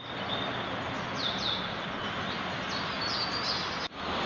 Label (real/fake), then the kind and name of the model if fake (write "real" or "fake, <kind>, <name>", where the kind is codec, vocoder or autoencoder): real